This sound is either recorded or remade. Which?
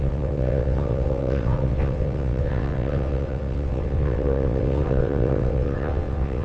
remade